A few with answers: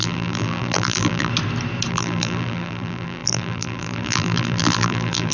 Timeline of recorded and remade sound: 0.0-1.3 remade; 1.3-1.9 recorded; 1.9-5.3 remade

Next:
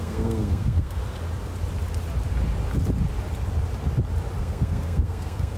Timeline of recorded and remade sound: 0.0-1.0 remade; 1.0-4.4 recorded; 4.4-5.6 remade

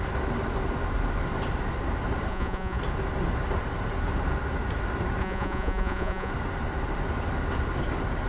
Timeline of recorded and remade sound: 0.0-2.3 recorded; 2.3-2.8 remade; 2.8-5.2 recorded; 5.2-6.3 remade; 6.3-8.3 recorded

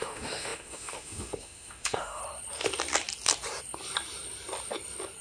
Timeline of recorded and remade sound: 0.0-2.2 remade; 2.2-5.2 recorded

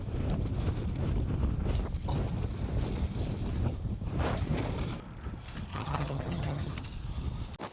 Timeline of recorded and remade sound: 0.0-5.7 recorded; 5.7-6.7 remade; 6.7-7.7 recorded